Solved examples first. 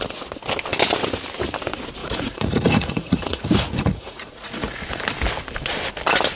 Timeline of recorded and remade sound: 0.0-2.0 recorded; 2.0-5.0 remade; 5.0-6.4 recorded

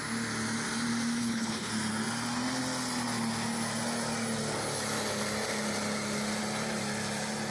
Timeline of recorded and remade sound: 0.0-1.2 recorded; 1.2-1.7 remade; 1.7-7.5 recorded

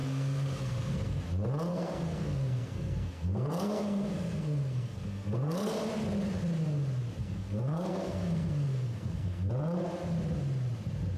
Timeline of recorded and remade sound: 0.0-1.2 remade; 1.2-1.7 recorded; 1.7-5.7 remade; 5.7-7.2 recorded; 7.2-9.5 remade; 9.5-11.2 recorded

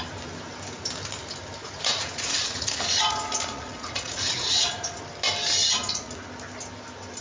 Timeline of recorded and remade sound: 0.0-1.6 recorded; 1.6-5.0 remade; 5.0-5.6 recorded; 5.6-6.1 remade; 6.1-7.2 recorded

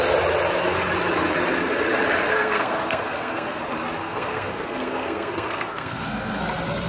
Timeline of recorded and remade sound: 0.0-2.3 recorded; 2.3-3.6 remade; 3.6-4.0 recorded; 4.0-6.4 remade; 6.4-6.9 recorded

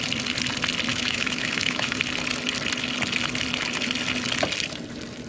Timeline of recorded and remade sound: 0.0-0.9 recorded; 0.9-2.0 remade; 2.0-5.3 recorded

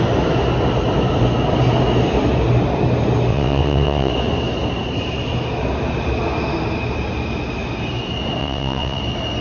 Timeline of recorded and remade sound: 0.0-3.3 recorded; 3.3-4.1 remade; 4.1-8.4 recorded; 8.4-9.0 remade; 9.0-9.4 recorded

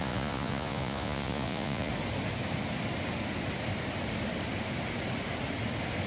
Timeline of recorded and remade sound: 0.0-1.9 remade; 1.9-6.1 recorded